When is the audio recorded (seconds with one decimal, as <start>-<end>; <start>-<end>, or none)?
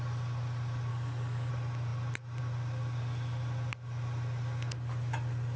0.0-0.9; 1.5-5.6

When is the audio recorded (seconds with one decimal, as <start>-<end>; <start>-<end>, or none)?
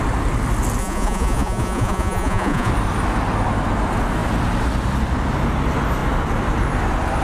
0.0-0.8; 2.7-7.2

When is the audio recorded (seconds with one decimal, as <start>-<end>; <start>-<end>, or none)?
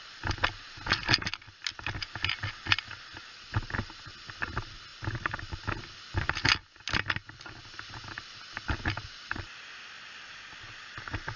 0.0-11.4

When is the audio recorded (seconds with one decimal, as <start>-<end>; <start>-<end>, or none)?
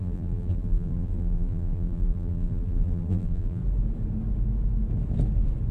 3.6-5.7